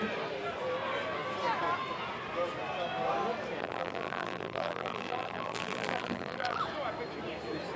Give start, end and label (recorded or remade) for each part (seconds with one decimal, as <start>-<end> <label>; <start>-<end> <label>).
0.0-3.6 recorded; 3.6-6.6 remade; 6.6-7.8 recorded